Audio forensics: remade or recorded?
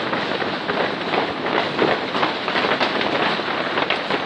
recorded